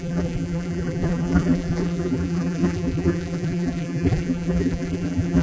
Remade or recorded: remade